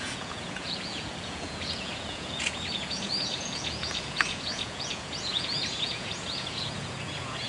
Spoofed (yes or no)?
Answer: yes